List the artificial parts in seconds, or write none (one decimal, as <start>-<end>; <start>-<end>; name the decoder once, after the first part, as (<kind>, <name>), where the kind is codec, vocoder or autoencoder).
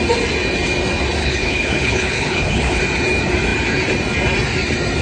1.2-2.8 (codec, HILCodec)